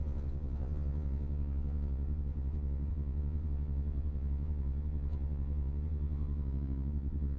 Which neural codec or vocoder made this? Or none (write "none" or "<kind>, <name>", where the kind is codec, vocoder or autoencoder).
vocoder, Vocos